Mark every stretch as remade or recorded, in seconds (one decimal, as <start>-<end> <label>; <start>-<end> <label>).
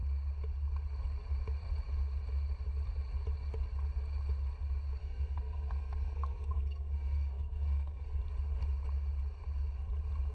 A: 0.0-5.0 recorded; 5.0-8.2 remade; 8.2-10.3 recorded